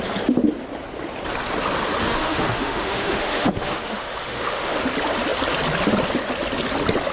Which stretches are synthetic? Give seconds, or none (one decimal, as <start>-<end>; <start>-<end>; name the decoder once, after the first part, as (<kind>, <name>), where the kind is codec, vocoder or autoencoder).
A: 2.1-4.8 (autoencoder, DAC-VAE)